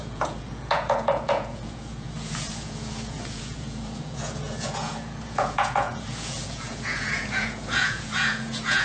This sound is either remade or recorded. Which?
remade